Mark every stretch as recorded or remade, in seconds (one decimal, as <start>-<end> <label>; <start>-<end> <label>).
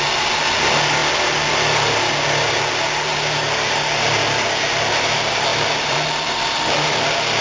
0.0-5.5 recorded; 5.5-6.7 remade; 6.7-7.4 recorded